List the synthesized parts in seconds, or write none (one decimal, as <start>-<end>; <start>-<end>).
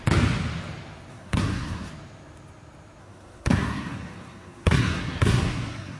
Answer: 1.1-1.9; 3.0-6.0